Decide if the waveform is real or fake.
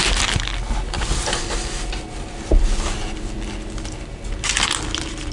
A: real